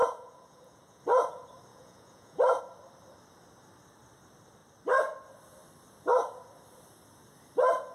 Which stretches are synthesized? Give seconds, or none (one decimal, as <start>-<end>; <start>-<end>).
0.0-1.0; 1.7-2.6